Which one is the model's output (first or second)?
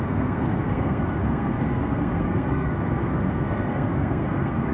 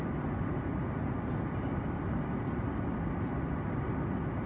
first